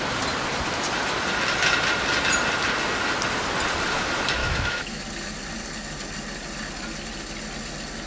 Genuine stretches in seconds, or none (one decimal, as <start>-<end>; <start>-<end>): 0.0-4.4; 5.0-8.1